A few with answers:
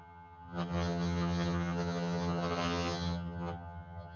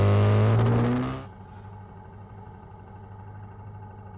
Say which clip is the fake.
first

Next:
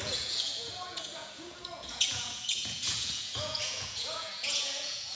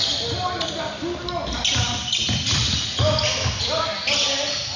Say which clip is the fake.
first